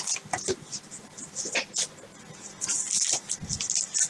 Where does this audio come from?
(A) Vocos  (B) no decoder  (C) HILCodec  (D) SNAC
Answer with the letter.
B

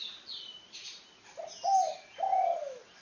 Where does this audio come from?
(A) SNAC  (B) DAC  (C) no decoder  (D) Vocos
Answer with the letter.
C